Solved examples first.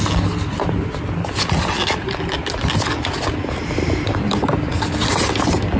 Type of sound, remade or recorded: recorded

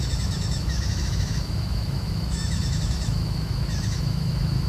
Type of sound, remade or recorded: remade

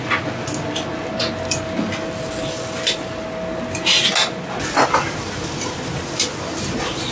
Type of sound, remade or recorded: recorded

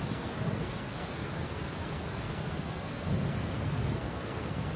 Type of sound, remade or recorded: remade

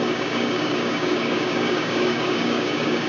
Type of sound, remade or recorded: remade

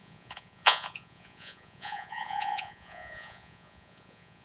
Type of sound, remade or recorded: remade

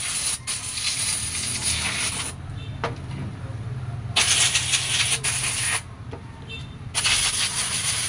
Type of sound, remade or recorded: recorded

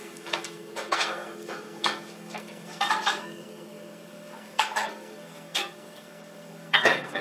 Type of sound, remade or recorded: remade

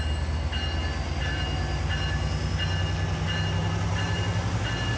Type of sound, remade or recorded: recorded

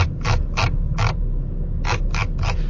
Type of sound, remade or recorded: recorded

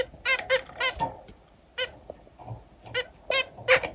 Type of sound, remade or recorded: recorded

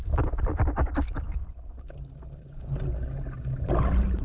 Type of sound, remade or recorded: recorded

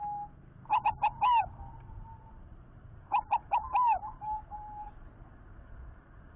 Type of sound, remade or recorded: recorded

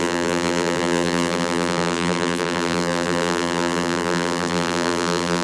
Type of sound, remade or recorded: remade